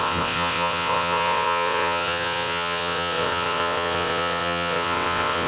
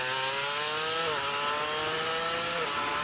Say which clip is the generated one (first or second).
first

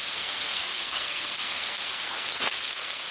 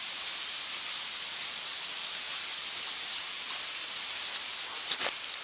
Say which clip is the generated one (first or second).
first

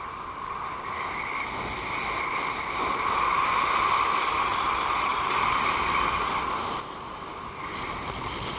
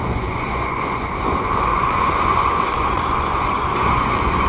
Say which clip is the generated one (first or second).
second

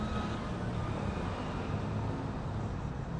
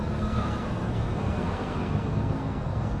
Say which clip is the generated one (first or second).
second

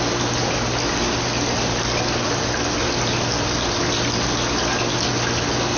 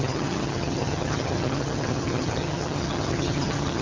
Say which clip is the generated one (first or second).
second